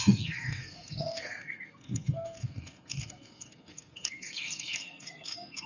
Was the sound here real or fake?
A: fake